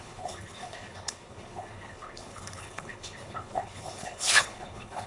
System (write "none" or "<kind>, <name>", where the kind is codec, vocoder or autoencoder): codec, HILCodec